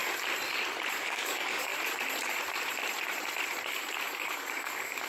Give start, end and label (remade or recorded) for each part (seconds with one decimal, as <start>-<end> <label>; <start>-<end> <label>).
0.0-1.0 recorded; 1.0-1.7 remade; 1.7-4.0 recorded; 4.0-5.1 remade